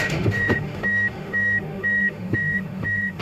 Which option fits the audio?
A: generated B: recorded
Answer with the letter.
A